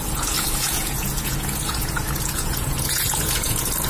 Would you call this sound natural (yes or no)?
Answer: no